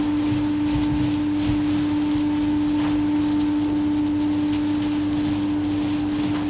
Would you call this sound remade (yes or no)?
no